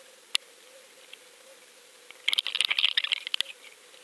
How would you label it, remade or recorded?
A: recorded